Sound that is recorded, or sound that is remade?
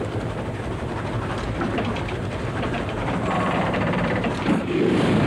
remade